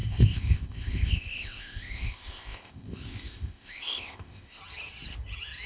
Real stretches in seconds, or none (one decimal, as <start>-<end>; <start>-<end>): 4.6-5.7